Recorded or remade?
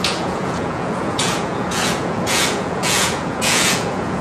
remade